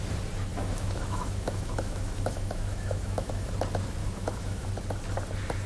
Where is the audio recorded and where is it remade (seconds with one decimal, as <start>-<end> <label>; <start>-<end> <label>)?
0.0-0.5 recorded; 0.5-3.5 remade; 3.5-4.0 recorded; 4.0-4.7 remade; 4.7-5.7 recorded